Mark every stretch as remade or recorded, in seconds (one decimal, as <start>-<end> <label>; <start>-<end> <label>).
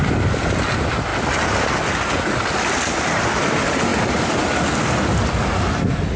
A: 0.0-6.2 recorded